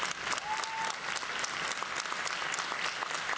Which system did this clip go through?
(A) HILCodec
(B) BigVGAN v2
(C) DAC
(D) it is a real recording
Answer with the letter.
D